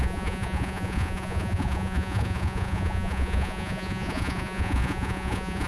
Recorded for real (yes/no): no